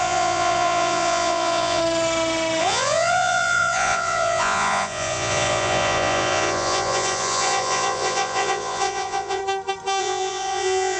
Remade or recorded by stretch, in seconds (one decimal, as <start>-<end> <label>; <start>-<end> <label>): 0.0-1.8 remade; 1.8-2.6 recorded; 2.6-9.4 remade; 9.4-10.0 recorded; 10.0-11.0 remade